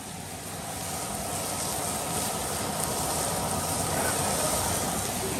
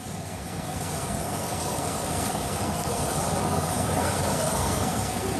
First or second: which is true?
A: first